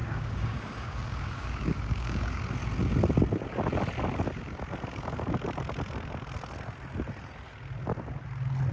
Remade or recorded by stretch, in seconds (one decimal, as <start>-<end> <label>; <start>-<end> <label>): 0.0-2.4 remade; 2.4-8.7 recorded